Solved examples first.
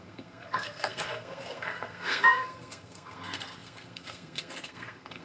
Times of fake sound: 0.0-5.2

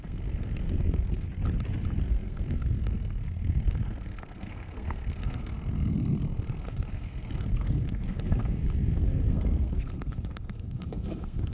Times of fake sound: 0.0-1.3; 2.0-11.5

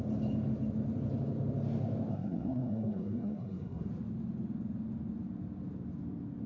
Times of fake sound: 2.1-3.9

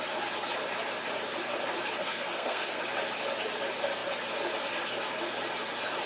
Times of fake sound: 2.0-2.8